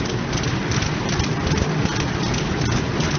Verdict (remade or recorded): recorded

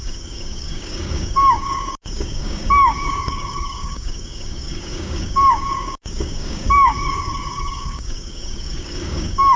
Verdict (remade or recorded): remade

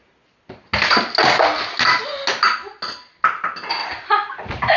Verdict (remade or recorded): recorded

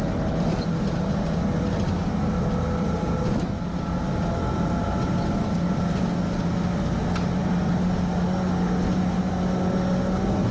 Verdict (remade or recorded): recorded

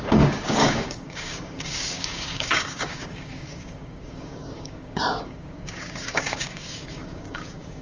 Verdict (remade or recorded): remade